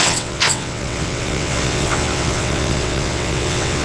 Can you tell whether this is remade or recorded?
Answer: remade